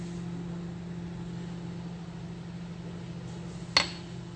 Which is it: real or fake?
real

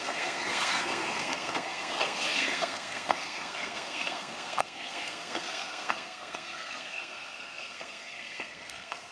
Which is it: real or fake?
fake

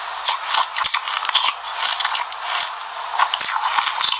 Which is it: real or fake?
real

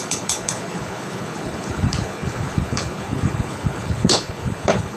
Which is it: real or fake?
fake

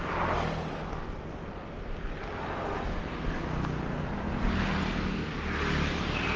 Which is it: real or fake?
real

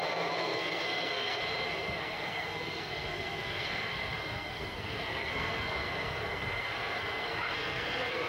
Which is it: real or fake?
fake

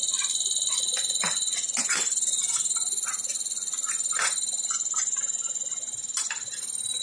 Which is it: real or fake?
real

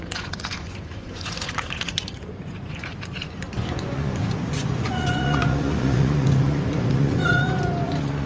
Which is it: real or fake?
fake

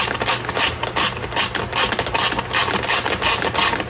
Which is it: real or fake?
real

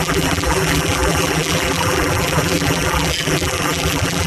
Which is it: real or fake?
fake